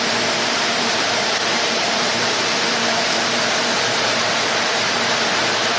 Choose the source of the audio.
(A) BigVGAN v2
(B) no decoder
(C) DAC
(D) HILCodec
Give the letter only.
A